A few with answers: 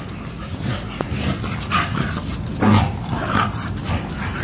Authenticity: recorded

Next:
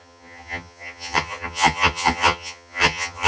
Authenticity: remade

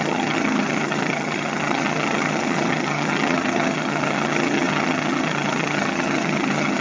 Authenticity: remade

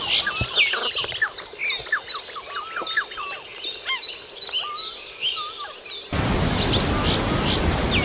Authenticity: recorded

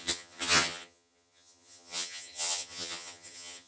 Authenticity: remade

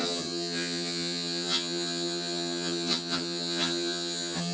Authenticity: remade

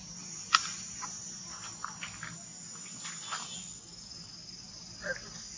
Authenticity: recorded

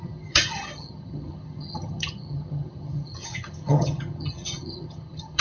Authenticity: remade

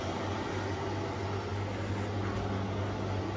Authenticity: recorded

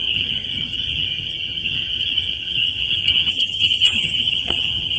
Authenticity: remade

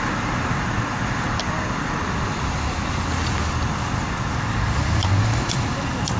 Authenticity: recorded